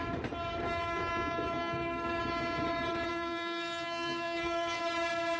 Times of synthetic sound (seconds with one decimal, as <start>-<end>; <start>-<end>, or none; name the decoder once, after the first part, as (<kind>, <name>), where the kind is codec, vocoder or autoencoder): 1.6-2.2 (codec, SNAC); 3.1-4.8